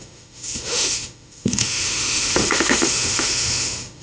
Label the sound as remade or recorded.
remade